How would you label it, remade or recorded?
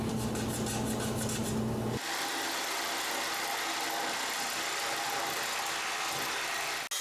recorded